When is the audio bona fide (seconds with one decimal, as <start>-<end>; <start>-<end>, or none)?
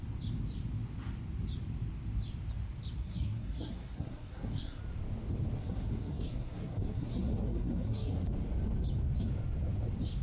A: 0.0-3.0; 4.8-5.6; 8.3-10.2